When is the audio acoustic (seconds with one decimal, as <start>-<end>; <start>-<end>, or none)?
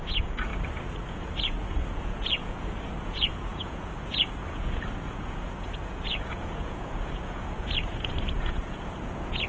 0.5-1.1